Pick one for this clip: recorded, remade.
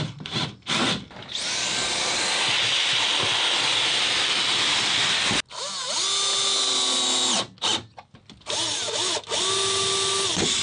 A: recorded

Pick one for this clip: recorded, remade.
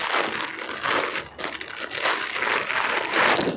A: recorded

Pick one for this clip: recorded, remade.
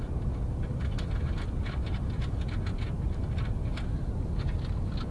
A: recorded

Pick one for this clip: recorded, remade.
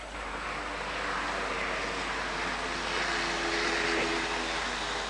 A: recorded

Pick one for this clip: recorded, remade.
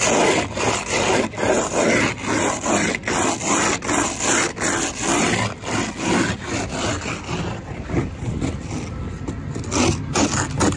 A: recorded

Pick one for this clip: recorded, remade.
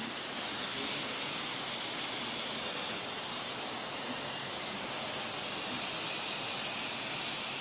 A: recorded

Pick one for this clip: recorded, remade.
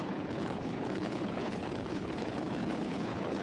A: remade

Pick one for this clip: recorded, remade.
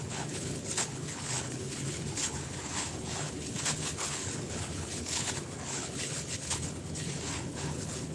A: remade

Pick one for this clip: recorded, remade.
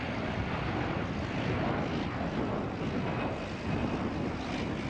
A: recorded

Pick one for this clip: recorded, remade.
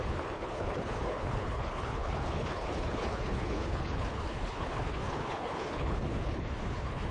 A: remade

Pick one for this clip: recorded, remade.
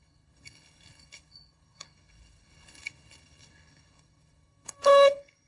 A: remade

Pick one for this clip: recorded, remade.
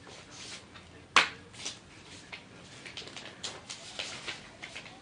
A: recorded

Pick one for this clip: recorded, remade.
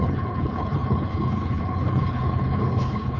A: remade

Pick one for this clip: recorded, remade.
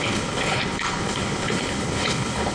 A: remade